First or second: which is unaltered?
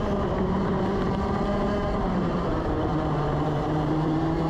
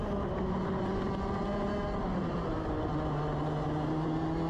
second